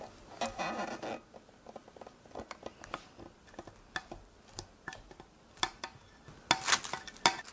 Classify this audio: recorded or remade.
recorded